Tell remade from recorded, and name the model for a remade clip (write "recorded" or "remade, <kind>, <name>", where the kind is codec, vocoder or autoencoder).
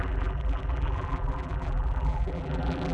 remade, vocoder, BigVGAN v2